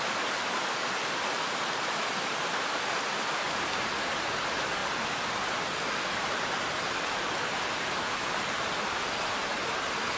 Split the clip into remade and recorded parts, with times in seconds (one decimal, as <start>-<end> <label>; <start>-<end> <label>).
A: 0.0-10.2 recorded